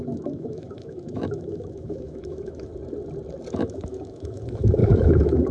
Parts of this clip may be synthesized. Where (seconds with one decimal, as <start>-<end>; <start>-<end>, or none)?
0.0-2.7; 3.5-5.5